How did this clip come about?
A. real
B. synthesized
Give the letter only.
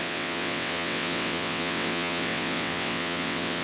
B